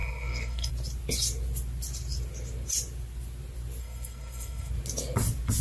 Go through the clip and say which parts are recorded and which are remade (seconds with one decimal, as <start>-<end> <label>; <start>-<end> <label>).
0.0-0.7 remade; 0.7-3.8 recorded; 3.8-4.7 remade; 4.7-5.6 recorded